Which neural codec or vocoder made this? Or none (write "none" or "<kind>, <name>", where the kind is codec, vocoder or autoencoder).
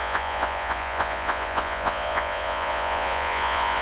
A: vocoder, Vocos